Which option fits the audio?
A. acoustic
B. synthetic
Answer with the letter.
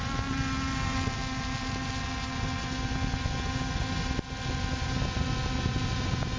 A